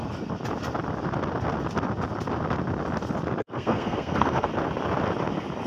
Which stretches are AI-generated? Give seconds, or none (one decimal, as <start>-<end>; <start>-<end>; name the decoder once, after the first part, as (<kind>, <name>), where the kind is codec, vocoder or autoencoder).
3.4-4.5 (codec, SNAC)